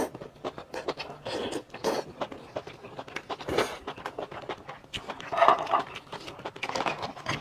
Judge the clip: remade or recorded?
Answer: recorded